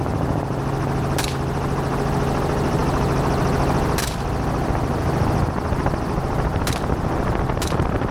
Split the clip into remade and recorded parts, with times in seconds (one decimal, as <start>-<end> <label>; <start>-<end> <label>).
0.0-8.1 recorded